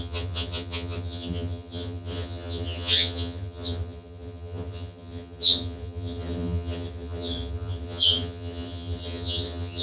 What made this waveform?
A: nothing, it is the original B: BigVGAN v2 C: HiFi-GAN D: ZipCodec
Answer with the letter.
C